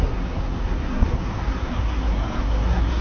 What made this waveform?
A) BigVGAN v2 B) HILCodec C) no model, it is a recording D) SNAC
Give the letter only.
D